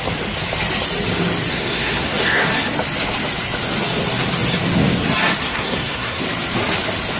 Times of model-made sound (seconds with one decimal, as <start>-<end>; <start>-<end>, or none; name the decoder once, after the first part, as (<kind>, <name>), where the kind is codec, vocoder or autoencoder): 1.5-2.5 (codec, SNAC); 5.4-6.2